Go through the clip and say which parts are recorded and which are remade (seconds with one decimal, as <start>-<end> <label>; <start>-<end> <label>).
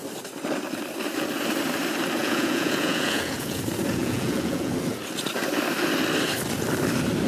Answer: 0.0-2.2 recorded; 2.2-3.6 remade; 3.6-4.0 recorded; 4.0-4.7 remade; 4.7-7.3 recorded